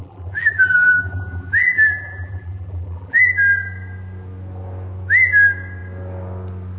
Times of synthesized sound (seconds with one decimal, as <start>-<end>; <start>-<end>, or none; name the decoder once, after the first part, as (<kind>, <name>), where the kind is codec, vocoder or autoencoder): 0.0-3.2 (vocoder, BigVGAN v2)